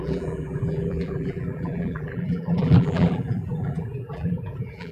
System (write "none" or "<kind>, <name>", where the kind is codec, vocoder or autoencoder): vocoder, BigVGAN v2